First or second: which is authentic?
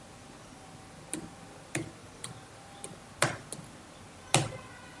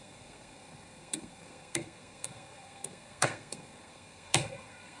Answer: first